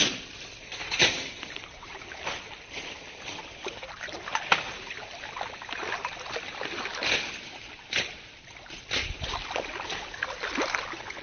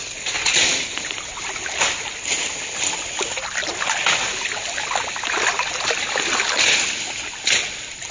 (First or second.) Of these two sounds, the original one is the second